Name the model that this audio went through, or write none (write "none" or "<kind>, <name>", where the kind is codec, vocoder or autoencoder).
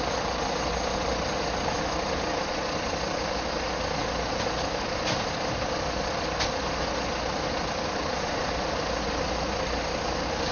none